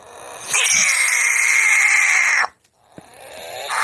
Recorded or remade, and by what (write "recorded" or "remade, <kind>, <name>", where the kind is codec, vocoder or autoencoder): recorded